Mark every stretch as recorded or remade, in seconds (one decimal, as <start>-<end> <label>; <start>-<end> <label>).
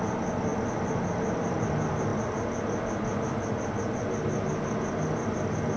0.0-5.8 recorded